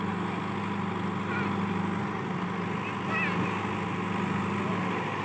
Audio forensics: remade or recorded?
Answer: recorded